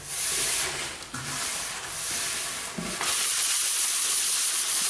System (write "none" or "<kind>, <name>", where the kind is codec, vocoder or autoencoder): none